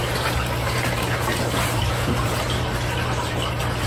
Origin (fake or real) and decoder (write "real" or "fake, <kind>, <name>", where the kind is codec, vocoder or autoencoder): real